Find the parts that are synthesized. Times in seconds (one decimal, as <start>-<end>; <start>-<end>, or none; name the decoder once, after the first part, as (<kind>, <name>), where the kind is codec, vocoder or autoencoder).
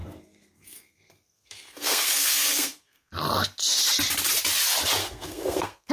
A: 0.0-3.1 (codec, SNAC); 5.0-5.9